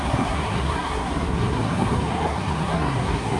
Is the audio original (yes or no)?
no